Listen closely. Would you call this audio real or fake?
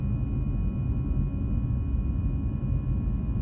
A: real